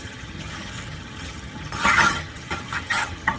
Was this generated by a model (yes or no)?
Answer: yes